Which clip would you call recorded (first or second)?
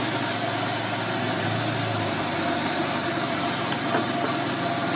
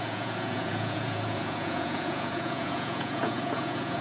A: first